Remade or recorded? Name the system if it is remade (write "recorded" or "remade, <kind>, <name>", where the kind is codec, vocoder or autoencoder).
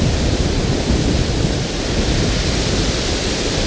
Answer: recorded